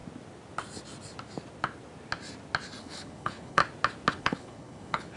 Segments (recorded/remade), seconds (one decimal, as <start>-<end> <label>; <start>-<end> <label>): 0.0-2.8 recorded; 2.8-3.6 remade; 3.6-4.2 recorded; 4.2-5.2 remade